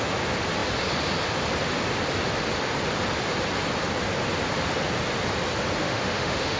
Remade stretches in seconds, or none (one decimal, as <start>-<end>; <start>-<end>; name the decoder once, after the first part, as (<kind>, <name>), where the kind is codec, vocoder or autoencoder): 5.8-6.6 (autoencoder, DAC-VAE)